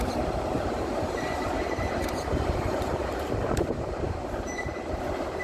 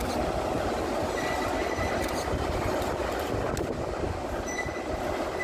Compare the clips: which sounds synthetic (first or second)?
first